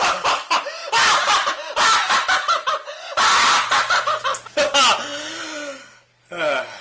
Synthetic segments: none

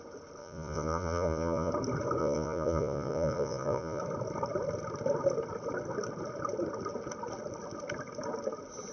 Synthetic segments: 0.4-1.7 (vocoder, Vocos); 2.2-4.0

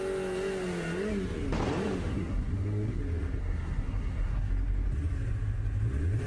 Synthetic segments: 2.1-3.0 (codec, SNAC); 3.4-4.5

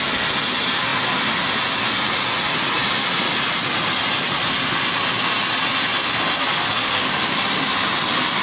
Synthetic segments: 6.4-7.4 (codec, DAC)

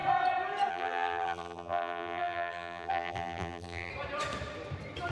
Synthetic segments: 0.7-3.9 (vocoder, BigVGAN v2)

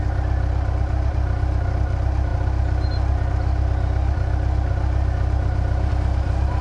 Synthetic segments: none